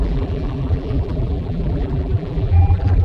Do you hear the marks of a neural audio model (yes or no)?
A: yes